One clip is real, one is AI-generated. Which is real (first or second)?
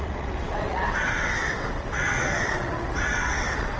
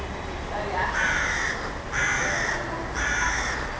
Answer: second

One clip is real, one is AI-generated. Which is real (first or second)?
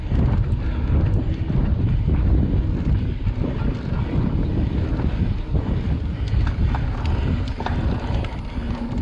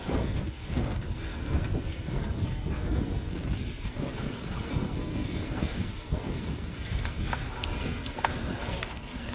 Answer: first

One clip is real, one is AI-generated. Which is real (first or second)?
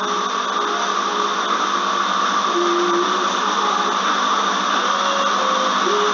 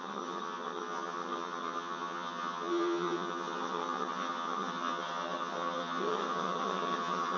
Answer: first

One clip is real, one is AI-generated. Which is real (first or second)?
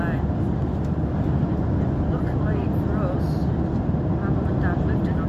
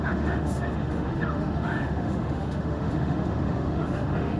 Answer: first